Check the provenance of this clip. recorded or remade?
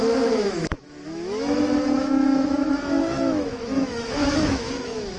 remade